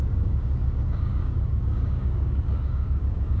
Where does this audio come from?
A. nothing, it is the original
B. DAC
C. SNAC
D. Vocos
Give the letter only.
B